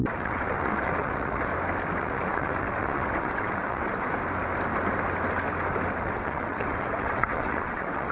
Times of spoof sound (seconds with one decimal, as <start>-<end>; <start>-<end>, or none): 0.0-1.5; 2.0-3.9; 6.0-8.1